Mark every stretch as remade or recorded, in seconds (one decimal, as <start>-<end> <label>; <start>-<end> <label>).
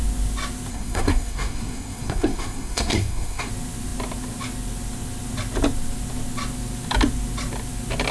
0.0-0.7 recorded; 0.7-3.5 remade; 3.5-8.1 recorded